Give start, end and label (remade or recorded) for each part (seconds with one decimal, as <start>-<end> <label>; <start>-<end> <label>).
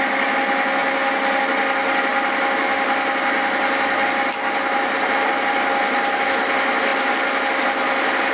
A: 0.0-8.3 recorded